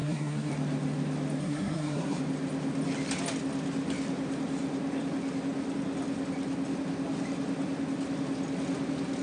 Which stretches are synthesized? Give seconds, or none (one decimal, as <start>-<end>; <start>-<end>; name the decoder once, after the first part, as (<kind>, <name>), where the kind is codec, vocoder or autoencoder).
0.0-0.5 (codec, SNAC); 1.4-2.2

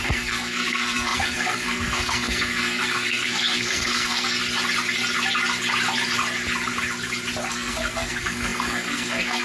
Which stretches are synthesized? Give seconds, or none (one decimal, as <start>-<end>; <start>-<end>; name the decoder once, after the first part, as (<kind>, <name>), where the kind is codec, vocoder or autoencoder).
0.0-4.4 (codec, SNAC); 7.5-9.4

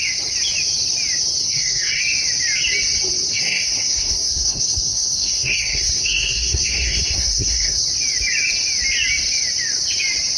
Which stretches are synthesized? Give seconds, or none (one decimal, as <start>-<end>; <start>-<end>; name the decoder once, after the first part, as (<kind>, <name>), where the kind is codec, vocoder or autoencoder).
1.4-2.0 (codec, SNAC); 3.3-7.8

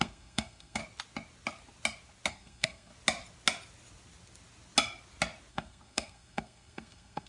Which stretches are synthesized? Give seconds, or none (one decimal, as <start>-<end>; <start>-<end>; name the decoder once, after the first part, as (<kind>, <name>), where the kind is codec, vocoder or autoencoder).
0.0-0.8 (codec, SNAC); 2.3-2.9; 5.5-7.3

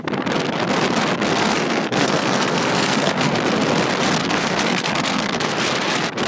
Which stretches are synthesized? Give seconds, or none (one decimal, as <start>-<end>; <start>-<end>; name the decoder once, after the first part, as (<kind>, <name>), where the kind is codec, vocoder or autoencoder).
1.3-3.3 (codec, SNAC); 4.2-5.6

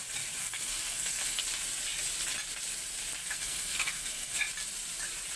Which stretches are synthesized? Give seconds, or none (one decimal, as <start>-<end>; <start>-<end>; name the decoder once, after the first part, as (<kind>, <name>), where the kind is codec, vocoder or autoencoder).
0.4-1.4 (codec, SNAC); 3.2-4.4

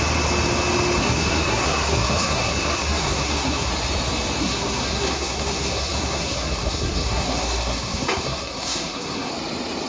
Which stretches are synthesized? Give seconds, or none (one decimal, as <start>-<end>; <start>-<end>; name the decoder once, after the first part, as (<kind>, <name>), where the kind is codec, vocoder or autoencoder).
1.0-3.7 (codec, SNAC); 4.4-9.3

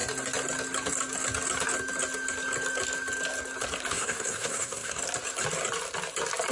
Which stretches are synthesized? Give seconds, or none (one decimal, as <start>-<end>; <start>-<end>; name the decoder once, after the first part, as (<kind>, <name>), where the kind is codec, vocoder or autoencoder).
3.9-5.0 (codec, SNAC)